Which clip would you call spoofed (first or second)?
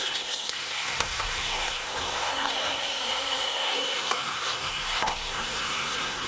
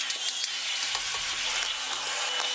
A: first